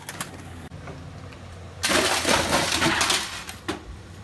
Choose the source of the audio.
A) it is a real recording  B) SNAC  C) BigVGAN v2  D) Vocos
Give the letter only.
A